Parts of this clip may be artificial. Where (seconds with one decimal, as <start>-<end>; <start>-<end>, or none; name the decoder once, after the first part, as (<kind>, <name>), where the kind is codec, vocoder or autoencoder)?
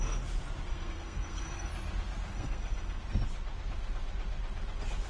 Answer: 0.7-1.7 (codec, SNAC); 2.3-3.0